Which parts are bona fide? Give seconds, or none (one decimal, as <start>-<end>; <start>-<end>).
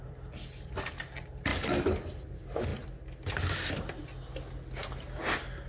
0.0-5.7